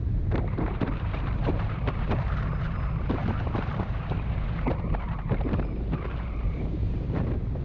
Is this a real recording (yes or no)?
no